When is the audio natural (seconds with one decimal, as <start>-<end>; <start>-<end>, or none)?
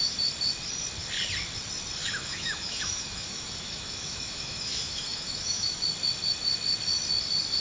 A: 0.0-2.0; 5.8-7.6